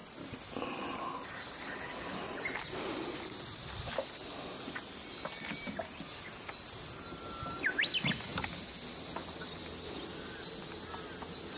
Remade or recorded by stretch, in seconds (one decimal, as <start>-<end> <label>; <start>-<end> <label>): 0.0-11.6 recorded